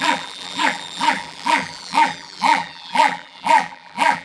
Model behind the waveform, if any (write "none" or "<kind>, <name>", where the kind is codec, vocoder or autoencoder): vocoder, BigVGAN v2